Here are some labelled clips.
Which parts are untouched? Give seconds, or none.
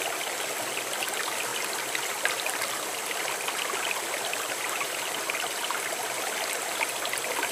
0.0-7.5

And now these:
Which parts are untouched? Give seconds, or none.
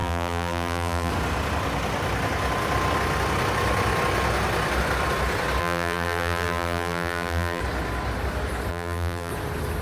1.1-5.6; 7.6-8.7; 9.3-9.8